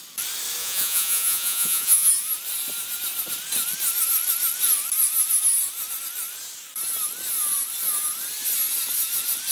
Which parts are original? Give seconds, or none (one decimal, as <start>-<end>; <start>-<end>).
0.0-0.6; 2.1-9.5